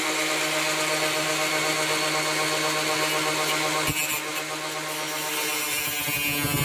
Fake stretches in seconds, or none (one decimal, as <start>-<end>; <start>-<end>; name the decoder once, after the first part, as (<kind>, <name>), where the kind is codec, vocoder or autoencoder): none

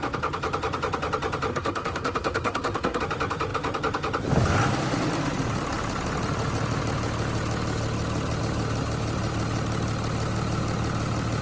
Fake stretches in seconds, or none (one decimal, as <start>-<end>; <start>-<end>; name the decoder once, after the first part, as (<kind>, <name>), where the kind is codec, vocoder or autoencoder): 1.5-3.0 (codec, SNAC)

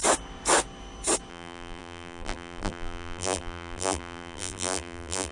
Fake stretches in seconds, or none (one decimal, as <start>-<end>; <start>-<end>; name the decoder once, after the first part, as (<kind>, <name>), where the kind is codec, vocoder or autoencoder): 1.3-5.3 (vocoder, BigVGAN v2)

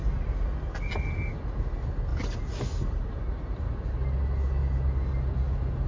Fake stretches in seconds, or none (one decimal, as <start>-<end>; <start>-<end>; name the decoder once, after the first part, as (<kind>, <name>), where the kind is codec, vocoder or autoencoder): none

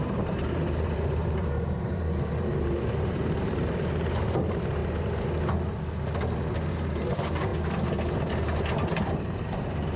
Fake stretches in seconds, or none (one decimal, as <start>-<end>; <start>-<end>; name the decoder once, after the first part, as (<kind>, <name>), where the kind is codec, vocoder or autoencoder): 0.0-4.8 (vocoder, BigVGAN v2); 6.7-7.5; 9.5-10.0

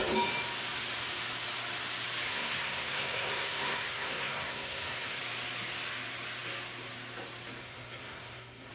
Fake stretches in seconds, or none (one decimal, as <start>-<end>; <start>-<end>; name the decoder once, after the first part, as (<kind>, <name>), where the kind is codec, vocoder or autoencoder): 2.3-5.2 (codec, SNAC); 7.6-8.7

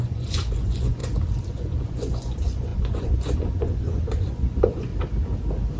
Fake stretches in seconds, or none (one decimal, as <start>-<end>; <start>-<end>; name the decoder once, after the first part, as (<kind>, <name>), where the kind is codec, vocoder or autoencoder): 0.0-1.0 (vocoder, Vocos); 1.5-4.9